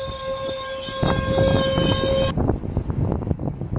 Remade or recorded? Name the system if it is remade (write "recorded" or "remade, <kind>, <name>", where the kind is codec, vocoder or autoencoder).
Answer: recorded